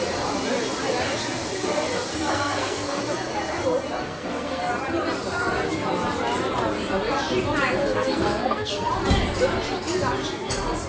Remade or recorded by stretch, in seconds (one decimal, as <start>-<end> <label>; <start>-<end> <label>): 0.0-2.1 recorded; 2.1-3.0 remade; 3.0-4.0 recorded; 4.0-4.7 remade; 4.7-7.8 recorded; 7.8-8.9 remade; 8.9-10.9 recorded